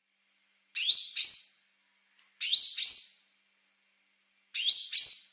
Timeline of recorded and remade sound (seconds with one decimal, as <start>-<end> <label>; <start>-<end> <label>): 0.0-5.3 recorded